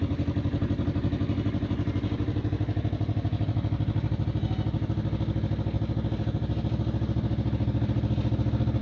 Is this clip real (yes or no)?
yes